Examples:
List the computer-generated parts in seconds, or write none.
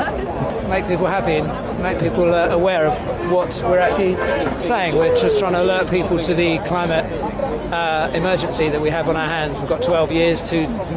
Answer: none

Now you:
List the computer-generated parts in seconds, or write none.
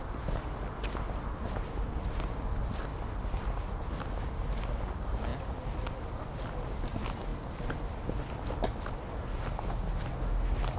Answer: none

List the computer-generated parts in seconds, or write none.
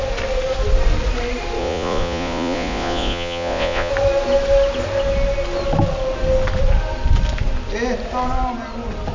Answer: 1.6-3.9 (vocoder, Vocos)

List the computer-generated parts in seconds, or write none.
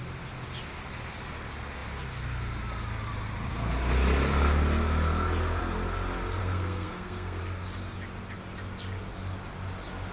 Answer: 6.4-7.4 (codec, SNAC)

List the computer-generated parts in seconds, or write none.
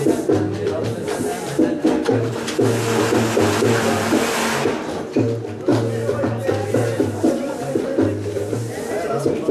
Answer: 1.8-2.3 (codec, SNAC)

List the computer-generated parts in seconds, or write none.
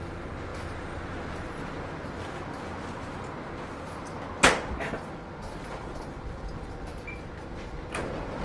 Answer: none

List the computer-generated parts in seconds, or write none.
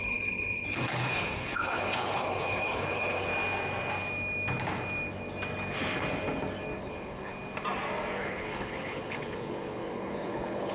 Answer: 0.0-3.3 (codec, HILCodec); 6.8-7.3; 8.2-10.7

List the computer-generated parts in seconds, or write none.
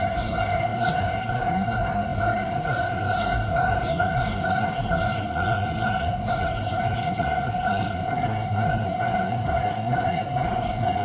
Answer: 0.0-11.0 (codec, SNAC)